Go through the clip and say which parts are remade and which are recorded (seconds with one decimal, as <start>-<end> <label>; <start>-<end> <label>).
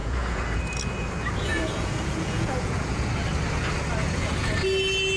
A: 0.0-0.6 remade; 0.6-1.5 recorded; 1.5-3.1 remade; 3.1-4.0 recorded; 4.0-4.5 remade; 4.5-5.2 recorded